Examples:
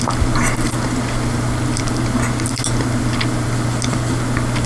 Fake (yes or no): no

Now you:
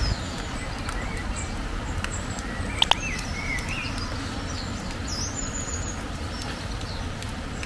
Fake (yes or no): no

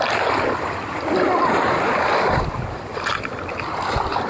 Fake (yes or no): yes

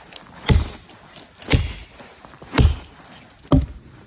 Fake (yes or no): no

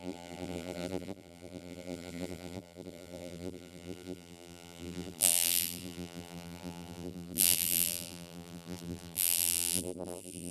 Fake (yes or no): yes